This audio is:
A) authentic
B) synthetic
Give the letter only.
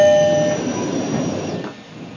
A